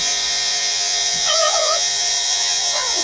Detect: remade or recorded remade